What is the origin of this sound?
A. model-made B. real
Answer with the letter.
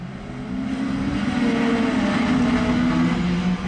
B